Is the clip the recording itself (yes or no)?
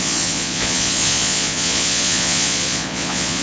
no